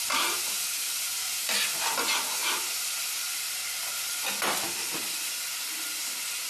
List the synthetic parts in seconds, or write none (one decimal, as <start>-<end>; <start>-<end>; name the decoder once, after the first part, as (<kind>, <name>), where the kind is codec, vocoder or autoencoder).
2.4-4.1 (vocoder, BigVGAN v2)

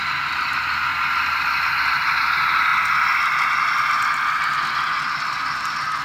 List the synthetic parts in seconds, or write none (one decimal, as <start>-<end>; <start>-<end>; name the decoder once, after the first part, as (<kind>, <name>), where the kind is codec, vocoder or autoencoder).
none

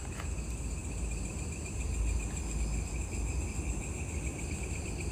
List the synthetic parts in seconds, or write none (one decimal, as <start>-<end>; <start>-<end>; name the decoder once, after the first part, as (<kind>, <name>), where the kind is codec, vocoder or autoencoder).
none

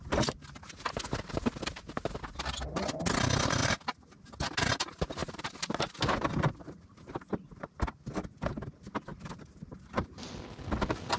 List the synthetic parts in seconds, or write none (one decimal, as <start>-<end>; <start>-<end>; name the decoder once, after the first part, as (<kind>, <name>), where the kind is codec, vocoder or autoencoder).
5.2-7.1 (vocoder, BigVGAN v2); 9.1-10.3

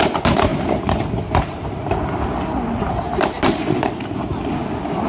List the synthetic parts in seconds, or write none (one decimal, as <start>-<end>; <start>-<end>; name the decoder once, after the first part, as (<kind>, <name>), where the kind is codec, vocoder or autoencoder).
0.5-1.1 (vocoder, BigVGAN v2); 2.8-3.9

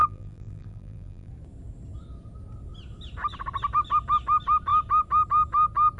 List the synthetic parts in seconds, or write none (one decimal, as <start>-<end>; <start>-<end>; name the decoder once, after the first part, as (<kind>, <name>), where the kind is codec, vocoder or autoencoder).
0.0-1.3 (vocoder, BigVGAN v2)